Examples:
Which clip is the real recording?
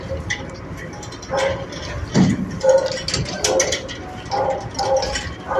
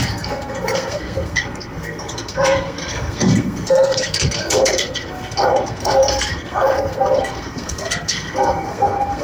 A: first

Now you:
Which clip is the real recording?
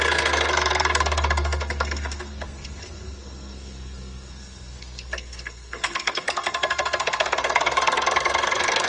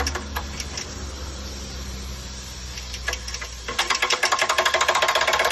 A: second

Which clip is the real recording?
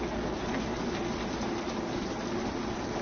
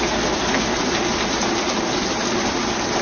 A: first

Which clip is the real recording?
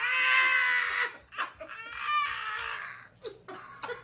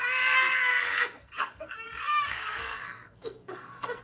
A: first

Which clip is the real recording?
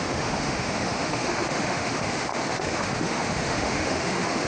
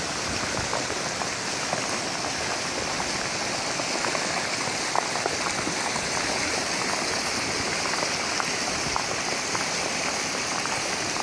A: second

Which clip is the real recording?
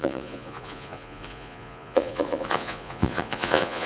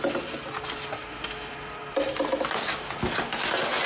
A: second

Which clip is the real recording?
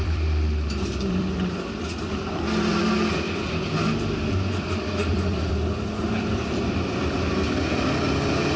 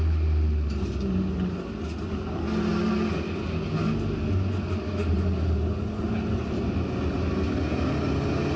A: second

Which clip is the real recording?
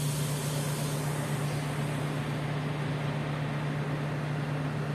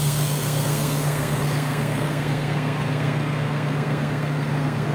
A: first